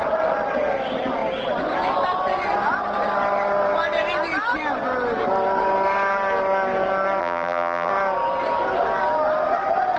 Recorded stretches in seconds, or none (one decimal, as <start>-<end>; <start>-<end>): 0.0-7.2; 7.9-10.0